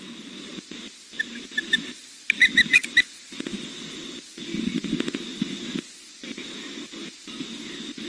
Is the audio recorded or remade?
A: recorded